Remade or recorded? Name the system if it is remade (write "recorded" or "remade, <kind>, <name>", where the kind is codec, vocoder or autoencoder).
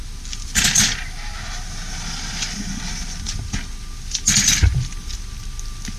recorded